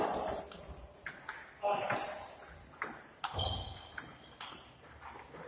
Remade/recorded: recorded